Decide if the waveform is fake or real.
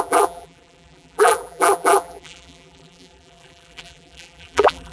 fake